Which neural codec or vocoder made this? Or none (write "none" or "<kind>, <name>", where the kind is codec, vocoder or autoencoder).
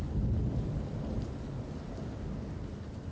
none